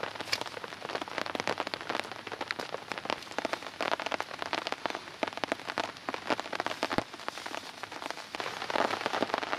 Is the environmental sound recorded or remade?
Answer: recorded